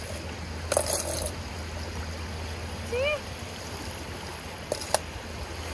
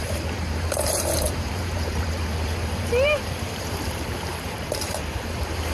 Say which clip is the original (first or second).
first